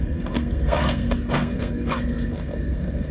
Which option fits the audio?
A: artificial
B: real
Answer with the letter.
A